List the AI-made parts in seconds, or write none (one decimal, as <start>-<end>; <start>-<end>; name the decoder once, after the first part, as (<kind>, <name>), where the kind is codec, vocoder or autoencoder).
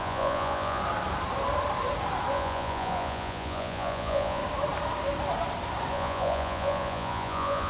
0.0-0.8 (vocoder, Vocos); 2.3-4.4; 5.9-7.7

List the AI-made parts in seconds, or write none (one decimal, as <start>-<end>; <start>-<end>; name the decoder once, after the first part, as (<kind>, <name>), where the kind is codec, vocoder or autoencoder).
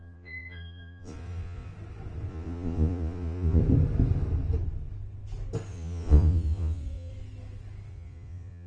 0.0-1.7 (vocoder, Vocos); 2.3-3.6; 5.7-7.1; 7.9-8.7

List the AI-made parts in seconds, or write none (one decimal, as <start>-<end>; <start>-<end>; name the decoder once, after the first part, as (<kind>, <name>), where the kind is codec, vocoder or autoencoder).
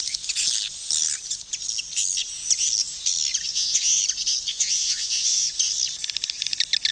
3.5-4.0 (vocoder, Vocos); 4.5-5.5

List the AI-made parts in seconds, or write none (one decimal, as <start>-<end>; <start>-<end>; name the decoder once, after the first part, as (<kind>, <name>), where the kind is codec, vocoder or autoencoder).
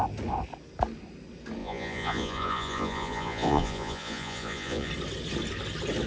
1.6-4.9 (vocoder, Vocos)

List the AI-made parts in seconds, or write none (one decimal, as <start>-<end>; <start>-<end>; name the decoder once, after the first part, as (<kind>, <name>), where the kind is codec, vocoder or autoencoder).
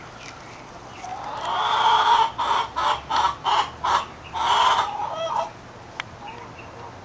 none